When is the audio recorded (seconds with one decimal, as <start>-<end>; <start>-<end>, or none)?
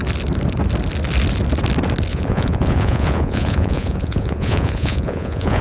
0.0-2.1